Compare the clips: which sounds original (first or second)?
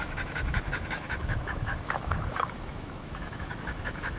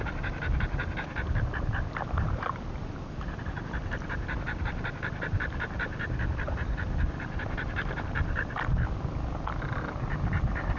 second